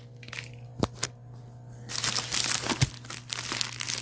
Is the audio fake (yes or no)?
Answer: no